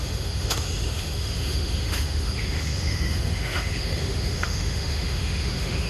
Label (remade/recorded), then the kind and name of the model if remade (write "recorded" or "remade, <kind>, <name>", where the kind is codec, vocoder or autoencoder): remade, autoencoder, DAC-VAE